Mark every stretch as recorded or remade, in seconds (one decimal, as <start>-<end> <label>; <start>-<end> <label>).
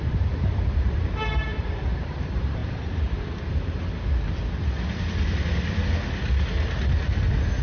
0.0-2.6 remade; 2.6-3.5 recorded; 3.5-3.9 remade; 3.9-7.6 recorded